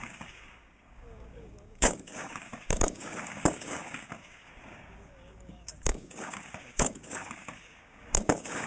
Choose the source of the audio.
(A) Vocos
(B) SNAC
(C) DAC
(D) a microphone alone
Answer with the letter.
C